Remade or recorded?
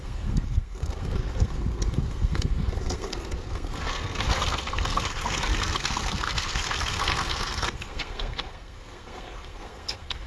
remade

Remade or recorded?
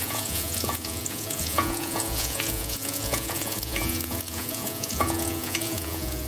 remade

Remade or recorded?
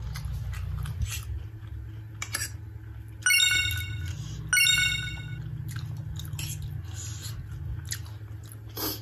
recorded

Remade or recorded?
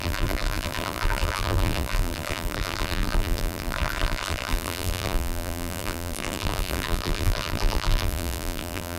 remade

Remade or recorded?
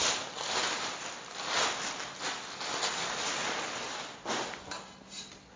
recorded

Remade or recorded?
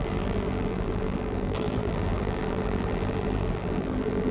remade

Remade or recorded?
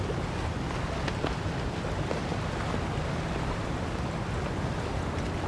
recorded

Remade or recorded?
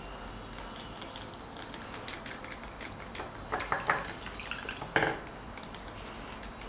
recorded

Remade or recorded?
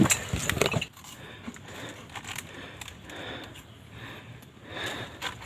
recorded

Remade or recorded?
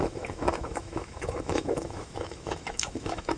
remade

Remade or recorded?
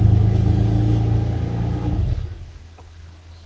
remade